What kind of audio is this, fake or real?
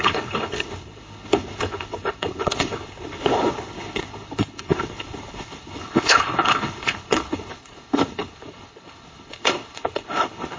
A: fake